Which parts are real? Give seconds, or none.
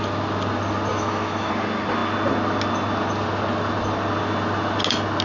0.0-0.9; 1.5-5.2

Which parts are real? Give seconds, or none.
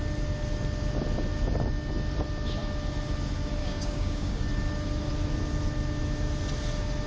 0.0-3.6; 4.4-7.1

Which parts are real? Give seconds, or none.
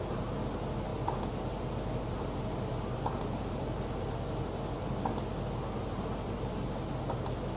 0.0-7.6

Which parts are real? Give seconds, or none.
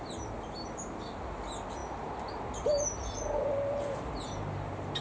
0.0-5.0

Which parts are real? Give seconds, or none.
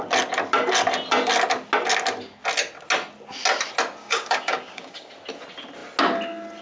0.0-4.0; 5.1-6.6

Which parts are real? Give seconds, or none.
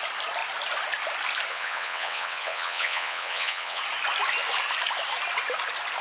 0.0-1.5; 3.8-6.0